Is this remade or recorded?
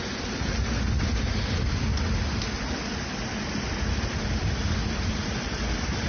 recorded